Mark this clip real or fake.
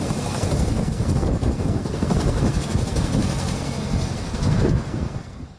fake